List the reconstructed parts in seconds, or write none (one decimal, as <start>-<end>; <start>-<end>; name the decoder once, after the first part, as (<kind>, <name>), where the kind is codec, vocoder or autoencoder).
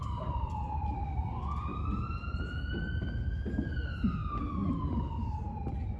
0.0-0.5 (vocoder, BigVGAN v2); 1.7-2.4